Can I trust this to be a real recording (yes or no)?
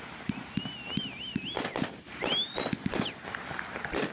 yes